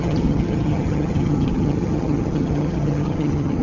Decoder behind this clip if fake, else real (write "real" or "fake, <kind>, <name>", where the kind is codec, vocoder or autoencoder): fake, vocoder, HiFi-GAN